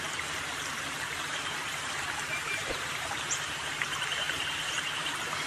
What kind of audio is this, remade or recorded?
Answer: remade